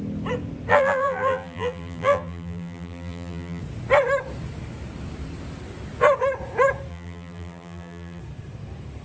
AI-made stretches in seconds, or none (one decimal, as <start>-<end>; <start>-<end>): 0.7-3.6; 6.9-8.2

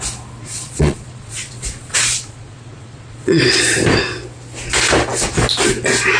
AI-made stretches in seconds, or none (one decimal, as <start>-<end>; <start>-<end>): 0.4-3.4

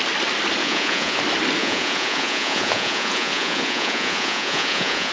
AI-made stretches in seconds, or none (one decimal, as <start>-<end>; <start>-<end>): 0.6-1.2; 1.6-5.1

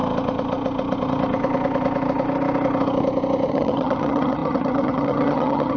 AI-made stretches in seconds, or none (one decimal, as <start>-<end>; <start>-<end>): 3.5-5.8

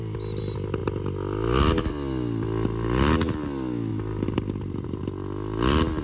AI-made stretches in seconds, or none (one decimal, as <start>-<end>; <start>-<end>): 3.9-5.0